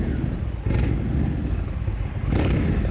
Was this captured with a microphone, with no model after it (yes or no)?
yes